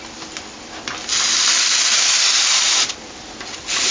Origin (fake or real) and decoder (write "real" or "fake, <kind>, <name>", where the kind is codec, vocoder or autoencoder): fake, vocoder, BigVGAN v2